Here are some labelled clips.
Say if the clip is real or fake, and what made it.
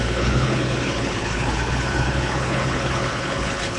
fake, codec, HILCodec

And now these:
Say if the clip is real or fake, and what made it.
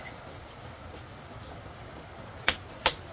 real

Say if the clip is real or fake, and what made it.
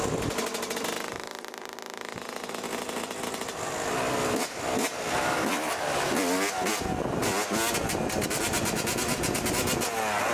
real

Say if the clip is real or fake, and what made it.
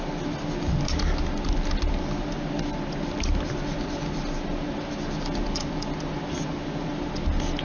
real